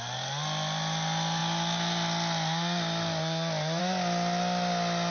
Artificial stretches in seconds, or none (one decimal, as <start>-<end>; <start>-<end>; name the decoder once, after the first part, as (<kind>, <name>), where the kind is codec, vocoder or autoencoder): none